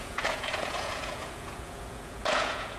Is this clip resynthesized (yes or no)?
yes